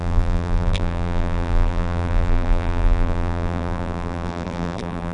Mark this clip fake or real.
fake